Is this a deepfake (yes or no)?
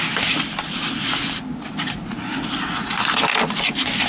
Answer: no